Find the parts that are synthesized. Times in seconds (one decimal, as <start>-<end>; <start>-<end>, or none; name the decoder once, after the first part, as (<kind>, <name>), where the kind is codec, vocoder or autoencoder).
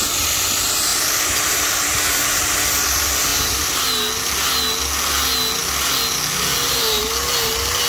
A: 0.9-2.3 (vocoder, BigVGAN v2); 3.3-3.8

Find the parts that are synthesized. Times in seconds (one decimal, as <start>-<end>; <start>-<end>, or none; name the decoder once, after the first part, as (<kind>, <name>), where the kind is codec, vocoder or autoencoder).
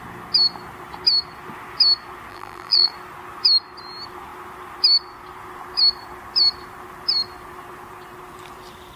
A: 2.3-2.9 (vocoder, BigVGAN v2)